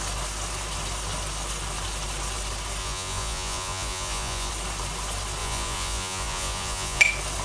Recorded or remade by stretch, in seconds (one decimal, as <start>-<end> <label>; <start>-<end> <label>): 0.0-2.8 recorded; 2.8-4.5 remade; 4.5-5.4 recorded; 5.4-7.0 remade; 7.0-7.4 recorded